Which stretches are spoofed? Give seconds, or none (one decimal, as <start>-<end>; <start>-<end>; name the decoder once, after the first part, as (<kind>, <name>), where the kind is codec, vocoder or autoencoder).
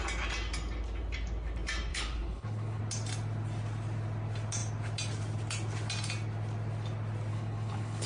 1.9-2.8 (codec, HILCodec); 7.3-8.1